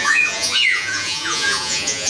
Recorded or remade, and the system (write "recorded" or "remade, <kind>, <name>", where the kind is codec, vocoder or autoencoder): remade, vocoder, Vocos